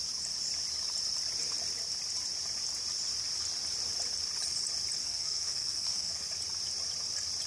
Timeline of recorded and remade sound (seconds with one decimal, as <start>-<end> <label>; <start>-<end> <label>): 0.0-5.0 recorded; 5.0-6.3 remade; 6.3-7.5 recorded